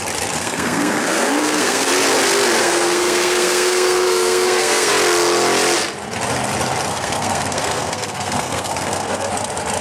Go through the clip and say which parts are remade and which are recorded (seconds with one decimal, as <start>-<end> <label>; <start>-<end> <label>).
0.0-0.4 recorded; 0.4-1.9 remade; 1.9-2.6 recorded; 2.6-4.9 remade; 4.9-6.9 recorded; 6.9-9.3 remade; 9.3-9.8 recorded